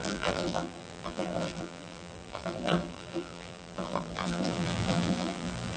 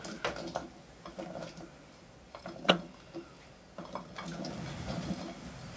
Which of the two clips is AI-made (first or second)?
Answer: first